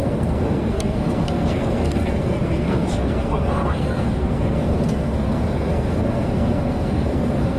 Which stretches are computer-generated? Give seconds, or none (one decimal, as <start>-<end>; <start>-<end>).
0.0-7.6